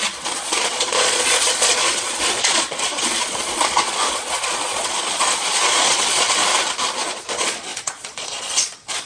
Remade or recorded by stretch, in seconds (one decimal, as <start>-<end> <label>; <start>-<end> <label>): 0.0-6.4 remade; 6.4-7.0 recorded; 7.0-9.1 remade